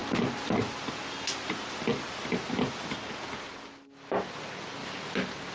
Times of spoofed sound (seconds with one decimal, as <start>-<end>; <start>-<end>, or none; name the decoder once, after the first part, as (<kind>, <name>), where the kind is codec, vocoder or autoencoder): 0.0-0.5 (vocoder, BigVGAN v2); 1.9-2.9; 4.8-5.5